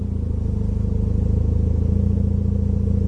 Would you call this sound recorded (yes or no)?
yes